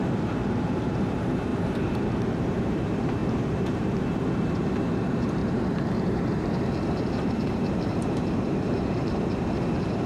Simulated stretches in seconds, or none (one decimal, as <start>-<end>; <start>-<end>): 0.0-10.1